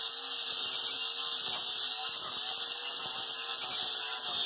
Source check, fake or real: real